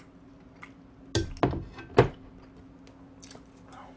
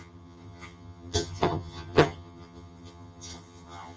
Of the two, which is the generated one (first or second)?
second